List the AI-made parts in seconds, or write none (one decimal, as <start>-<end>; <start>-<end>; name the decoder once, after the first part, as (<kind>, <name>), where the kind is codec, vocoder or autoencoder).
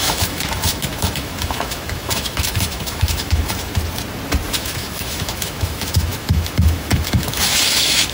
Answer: 0.0-3.7 (autoencoder, DAC-VAE); 4.5-8.1